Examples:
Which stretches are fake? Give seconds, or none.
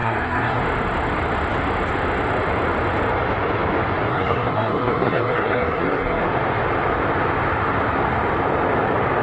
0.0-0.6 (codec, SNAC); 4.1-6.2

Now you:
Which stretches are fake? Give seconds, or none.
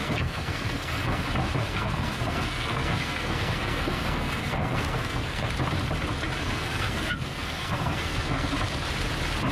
0.0-1.2 (codec, SNAC); 1.6-5.5; 6.4-8.5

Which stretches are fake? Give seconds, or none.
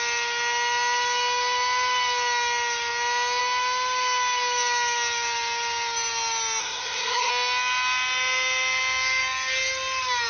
6.6-7.3 (codec, SNAC)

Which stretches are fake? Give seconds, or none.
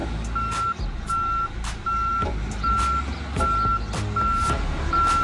none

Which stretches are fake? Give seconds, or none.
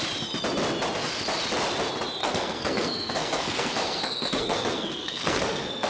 2.2-5.9 (codec, SNAC)